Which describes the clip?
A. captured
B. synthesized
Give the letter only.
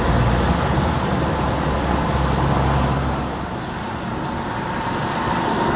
A